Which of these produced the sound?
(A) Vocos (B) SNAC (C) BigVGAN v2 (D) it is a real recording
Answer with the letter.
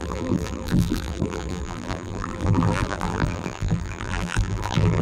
C